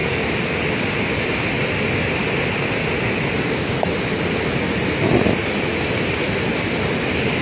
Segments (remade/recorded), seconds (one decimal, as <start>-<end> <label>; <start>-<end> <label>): 0.0-7.4 recorded